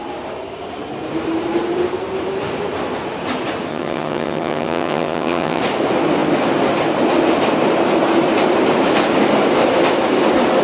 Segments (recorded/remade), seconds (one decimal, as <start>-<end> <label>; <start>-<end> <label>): 0.0-3.7 recorded; 3.7-5.6 remade; 5.6-10.6 recorded